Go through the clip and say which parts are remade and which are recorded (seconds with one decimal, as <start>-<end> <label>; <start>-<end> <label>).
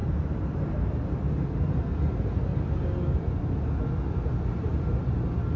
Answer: 0.0-5.6 recorded